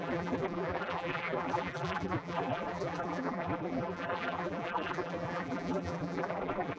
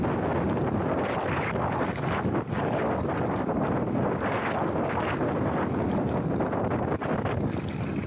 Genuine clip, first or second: second